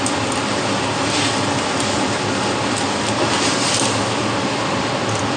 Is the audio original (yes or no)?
yes